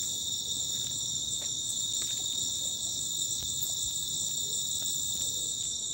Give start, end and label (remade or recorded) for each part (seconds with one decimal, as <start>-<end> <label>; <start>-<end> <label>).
0.0-2.9 recorded; 2.9-3.9 remade; 3.9-5.9 recorded